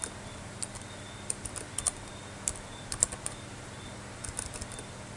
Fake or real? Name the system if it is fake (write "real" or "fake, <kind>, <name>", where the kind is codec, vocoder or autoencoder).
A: fake, vocoder, BigVGAN v2